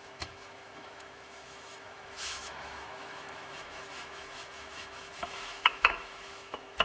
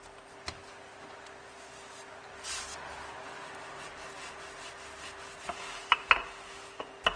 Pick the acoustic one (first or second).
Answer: second